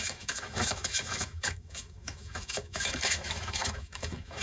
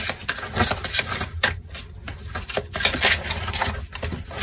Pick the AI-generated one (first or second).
first